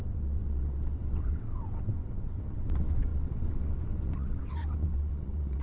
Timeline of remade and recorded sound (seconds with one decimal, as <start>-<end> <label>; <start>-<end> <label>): 0.0-5.6 remade